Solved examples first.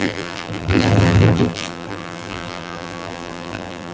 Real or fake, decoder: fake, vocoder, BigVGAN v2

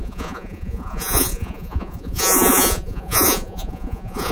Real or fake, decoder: fake, vocoder, Vocos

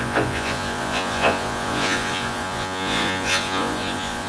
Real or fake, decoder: fake, vocoder, Vocos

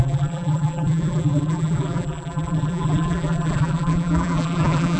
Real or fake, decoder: fake, vocoder, BigVGAN v2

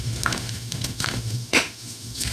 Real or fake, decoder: fake, autoencoder, DAC-VAE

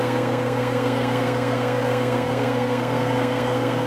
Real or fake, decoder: fake, codec, SNAC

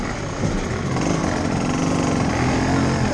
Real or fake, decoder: real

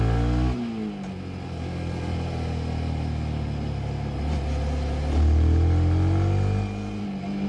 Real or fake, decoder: real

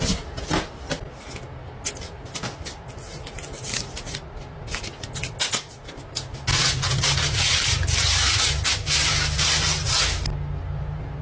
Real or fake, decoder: real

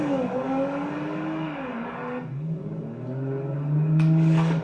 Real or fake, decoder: fake, codec, DAC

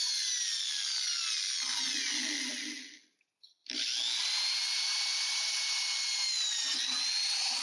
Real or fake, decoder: real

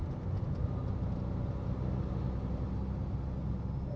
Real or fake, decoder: real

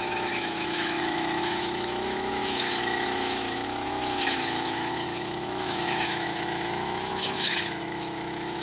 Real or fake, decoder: fake, autoencoder, DAC-VAE